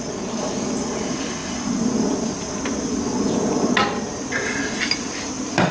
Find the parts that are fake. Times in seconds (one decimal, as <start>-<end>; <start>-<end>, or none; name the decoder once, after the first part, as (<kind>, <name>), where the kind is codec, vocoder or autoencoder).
none